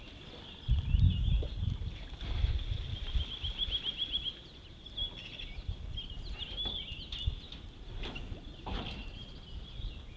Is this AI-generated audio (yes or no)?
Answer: no